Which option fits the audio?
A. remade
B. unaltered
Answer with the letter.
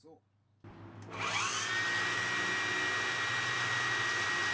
B